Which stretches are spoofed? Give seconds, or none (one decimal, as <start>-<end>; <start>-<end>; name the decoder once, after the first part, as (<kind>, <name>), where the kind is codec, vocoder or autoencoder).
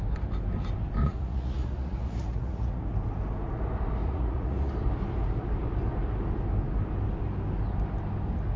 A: 1.0-2.8 (vocoder, Vocos); 4.0-4.7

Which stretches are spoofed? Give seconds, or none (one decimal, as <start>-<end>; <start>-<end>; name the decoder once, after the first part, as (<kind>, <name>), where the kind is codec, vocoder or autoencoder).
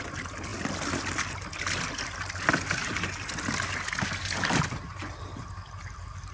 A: none